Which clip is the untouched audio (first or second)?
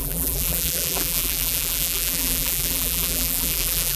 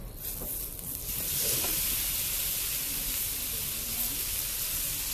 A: second